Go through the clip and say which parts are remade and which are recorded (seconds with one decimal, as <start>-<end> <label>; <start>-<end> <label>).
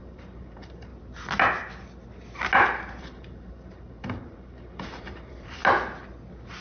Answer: 0.0-0.9 remade; 0.9-3.0 recorded; 3.0-5.6 remade; 5.6-6.6 recorded